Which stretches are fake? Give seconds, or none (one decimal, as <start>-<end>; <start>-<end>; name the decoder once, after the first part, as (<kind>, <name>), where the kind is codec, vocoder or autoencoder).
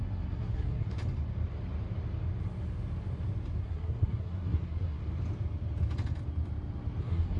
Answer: 0.0-1.0 (codec, SNAC); 3.6-5.0; 7.0-7.4